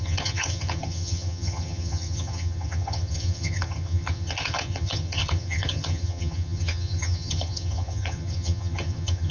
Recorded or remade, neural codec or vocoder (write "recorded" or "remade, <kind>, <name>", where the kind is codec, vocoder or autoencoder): remade, vocoder, HiFi-GAN